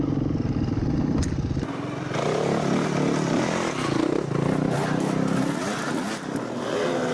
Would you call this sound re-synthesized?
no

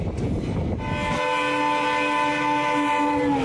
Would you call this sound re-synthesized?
no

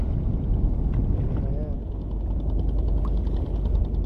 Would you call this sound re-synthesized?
no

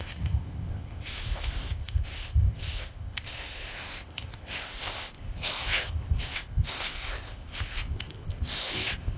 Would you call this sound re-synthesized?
yes